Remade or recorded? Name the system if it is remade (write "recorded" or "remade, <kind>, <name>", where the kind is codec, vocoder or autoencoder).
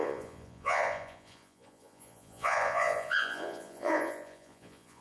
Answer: remade, vocoder, Vocos